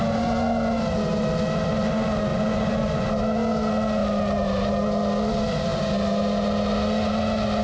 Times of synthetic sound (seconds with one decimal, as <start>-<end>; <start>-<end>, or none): 2.3-3.1